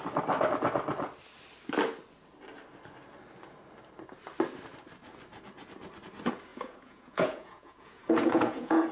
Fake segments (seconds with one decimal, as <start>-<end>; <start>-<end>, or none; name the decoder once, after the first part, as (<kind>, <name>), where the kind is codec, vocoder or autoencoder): 6.5-8.9 (vocoder, Vocos)